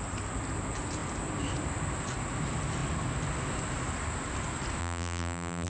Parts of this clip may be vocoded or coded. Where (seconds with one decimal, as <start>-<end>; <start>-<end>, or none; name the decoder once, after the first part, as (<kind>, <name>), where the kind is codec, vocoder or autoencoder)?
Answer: 4.8-5.7 (vocoder, BigVGAN v2)